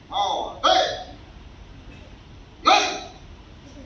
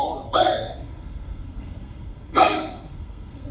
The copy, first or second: second